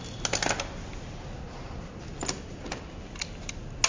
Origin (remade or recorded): recorded